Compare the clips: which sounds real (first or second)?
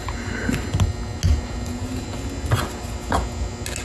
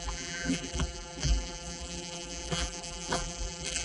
first